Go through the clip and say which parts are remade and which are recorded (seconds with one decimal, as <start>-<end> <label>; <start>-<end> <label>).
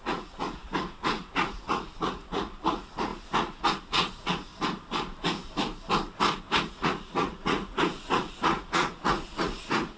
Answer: 0.0-4.5 remade; 4.5-6.6 recorded; 6.6-10.0 remade